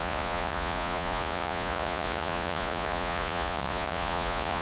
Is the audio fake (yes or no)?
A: yes